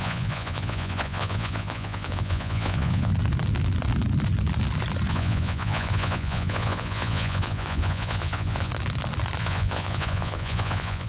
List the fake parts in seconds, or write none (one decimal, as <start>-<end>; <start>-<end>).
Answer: 0.0-3.1; 5.1-8.7; 9.4-11.1